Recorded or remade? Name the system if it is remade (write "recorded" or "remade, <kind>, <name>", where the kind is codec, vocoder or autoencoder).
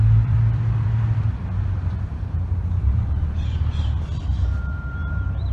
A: remade, vocoder, BigVGAN v2